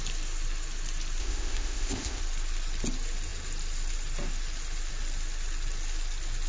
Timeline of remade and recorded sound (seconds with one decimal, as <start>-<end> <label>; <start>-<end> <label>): 0.0-1.2 recorded; 1.2-2.2 remade; 2.2-6.5 recorded

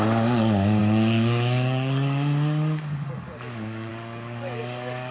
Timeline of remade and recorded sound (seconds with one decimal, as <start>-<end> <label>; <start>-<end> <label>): 0.0-5.1 remade

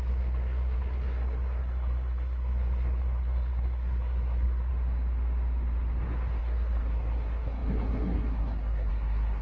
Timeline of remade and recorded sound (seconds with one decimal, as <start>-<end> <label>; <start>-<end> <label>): 0.0-4.7 remade; 4.7-6.4 recorded; 6.4-9.4 remade

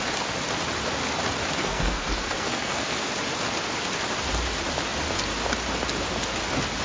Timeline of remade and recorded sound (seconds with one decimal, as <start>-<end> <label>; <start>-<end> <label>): 0.0-1.6 recorded; 1.6-3.1 remade; 3.1-6.8 recorded

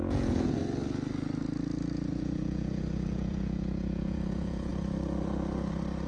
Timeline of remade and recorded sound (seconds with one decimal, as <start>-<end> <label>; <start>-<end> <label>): 0.0-0.6 remade; 0.6-2.1 recorded; 2.1-4.7 remade; 4.7-6.1 recorded

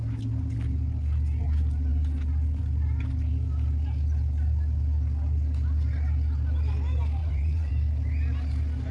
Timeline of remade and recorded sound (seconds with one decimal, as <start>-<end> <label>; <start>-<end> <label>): 0.0-7.2 recorded; 7.2-7.7 remade; 7.7-8.9 recorded

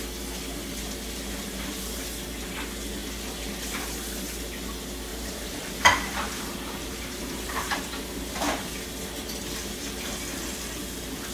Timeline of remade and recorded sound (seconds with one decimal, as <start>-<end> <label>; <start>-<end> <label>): 0.0-5.1 recorded; 5.1-7.8 remade; 7.8-11.3 recorded

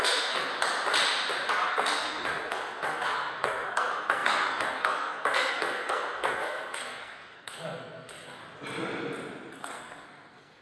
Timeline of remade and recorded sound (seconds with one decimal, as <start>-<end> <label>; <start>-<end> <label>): 0.0-0.5 remade; 0.5-1.5 recorded; 1.5-8.4 remade; 8.4-9.6 recorded; 9.6-10.6 remade